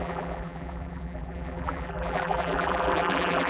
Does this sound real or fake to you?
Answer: fake